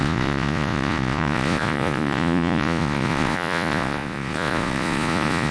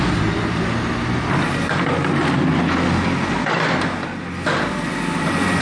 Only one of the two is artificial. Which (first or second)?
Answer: first